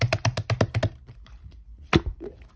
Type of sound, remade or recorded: recorded